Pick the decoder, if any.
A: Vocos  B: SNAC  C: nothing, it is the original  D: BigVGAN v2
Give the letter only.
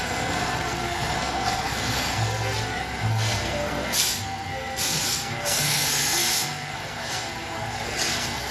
B